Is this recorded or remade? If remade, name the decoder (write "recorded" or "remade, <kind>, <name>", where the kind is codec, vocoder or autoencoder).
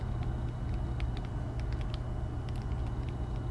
recorded